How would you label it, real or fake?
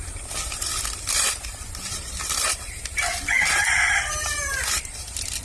fake